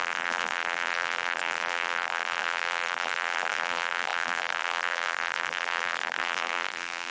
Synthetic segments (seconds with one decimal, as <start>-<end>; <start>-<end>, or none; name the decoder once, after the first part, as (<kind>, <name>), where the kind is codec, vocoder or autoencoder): 0.0-7.1 (vocoder, BigVGAN v2)